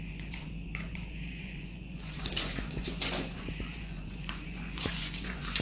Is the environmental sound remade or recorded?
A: remade